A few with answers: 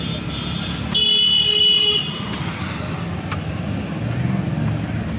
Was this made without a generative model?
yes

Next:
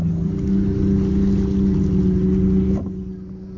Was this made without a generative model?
yes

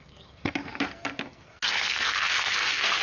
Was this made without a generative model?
no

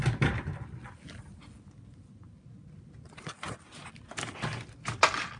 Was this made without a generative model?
yes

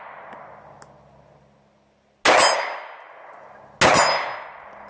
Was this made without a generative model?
yes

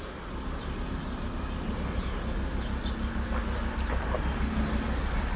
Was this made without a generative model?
yes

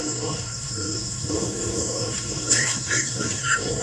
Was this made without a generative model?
no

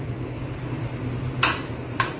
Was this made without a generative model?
yes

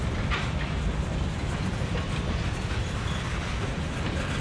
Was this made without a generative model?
yes